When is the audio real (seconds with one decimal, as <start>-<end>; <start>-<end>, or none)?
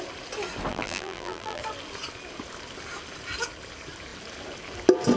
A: 0.0-0.7; 1.6-5.2